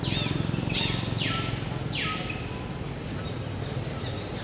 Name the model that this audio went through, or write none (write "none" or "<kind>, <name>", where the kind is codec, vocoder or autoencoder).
none